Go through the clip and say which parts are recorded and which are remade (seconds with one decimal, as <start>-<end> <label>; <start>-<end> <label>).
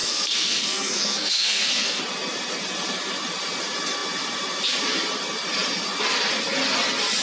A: 0.0-2.0 remade; 2.0-7.2 recorded